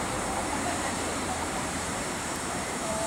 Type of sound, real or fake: fake